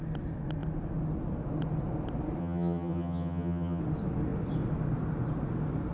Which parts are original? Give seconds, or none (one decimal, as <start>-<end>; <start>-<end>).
0.0-2.4; 3.8-5.9